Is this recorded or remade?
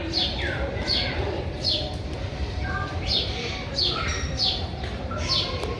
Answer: remade